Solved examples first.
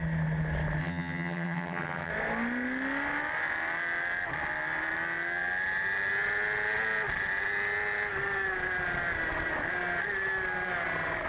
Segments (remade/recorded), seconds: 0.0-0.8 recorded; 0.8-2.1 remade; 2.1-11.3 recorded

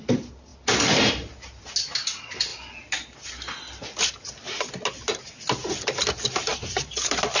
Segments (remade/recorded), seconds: 0.0-7.4 recorded

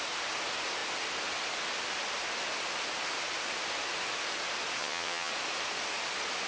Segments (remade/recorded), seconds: 0.0-4.8 recorded; 4.8-5.3 remade; 5.3-6.5 recorded

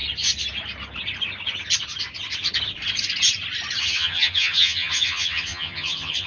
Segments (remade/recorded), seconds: 0.0-3.8 recorded; 3.8-6.3 remade

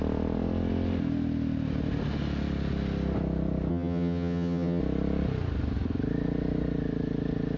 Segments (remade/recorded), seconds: 0.0-3.7 recorded; 3.7-4.8 remade; 4.8-7.6 recorded